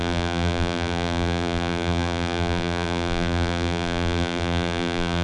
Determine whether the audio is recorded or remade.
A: remade